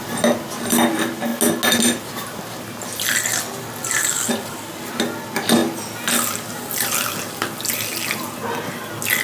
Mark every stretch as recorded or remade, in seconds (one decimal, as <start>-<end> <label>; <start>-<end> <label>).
0.0-9.2 recorded